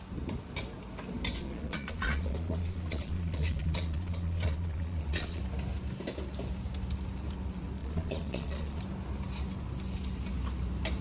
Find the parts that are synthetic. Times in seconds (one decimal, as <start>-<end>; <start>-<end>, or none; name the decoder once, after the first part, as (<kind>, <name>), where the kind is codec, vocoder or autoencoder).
1.4-5.4 (vocoder, Vocos); 7.8-8.8